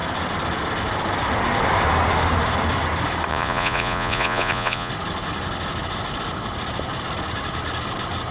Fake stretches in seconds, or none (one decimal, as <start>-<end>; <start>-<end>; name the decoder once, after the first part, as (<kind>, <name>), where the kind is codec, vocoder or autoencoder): 3.3-4.9 (vocoder, Vocos)

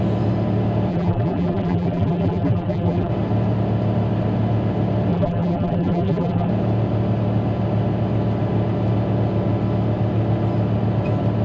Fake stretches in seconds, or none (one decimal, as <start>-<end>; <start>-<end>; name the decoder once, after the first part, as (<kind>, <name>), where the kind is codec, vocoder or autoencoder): 0.9-3.1 (vocoder, BigVGAN v2); 5.1-6.5

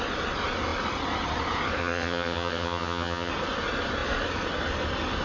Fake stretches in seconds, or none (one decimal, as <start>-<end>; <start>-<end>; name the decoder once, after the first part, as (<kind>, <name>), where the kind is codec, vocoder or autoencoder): 1.8-3.3 (vocoder, HiFi-GAN)

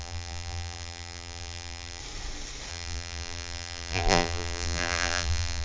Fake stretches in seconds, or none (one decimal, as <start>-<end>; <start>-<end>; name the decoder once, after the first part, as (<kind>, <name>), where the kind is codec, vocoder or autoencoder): 0.0-2.0 (vocoder, BigVGAN v2); 2.7-5.6